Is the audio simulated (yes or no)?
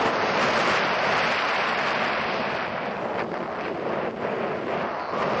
no